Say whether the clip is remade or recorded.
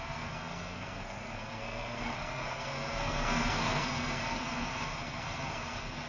remade